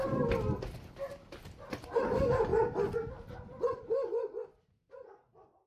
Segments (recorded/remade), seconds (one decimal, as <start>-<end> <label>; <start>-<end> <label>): 0.0-5.7 recorded